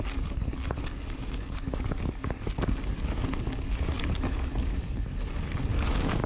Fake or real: fake